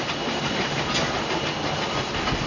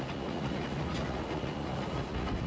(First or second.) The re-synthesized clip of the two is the second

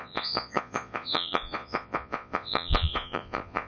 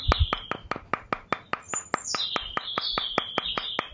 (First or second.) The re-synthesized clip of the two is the first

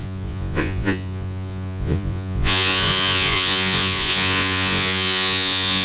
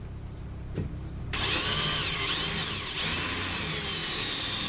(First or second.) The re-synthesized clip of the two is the first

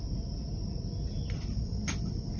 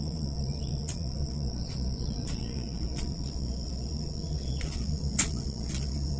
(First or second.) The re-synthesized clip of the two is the second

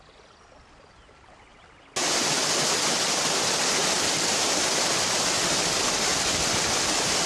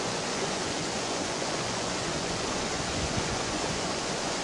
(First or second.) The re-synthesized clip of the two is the second